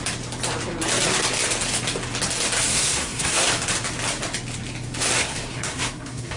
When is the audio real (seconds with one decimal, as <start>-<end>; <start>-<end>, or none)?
0.0-2.7; 3.5-5.2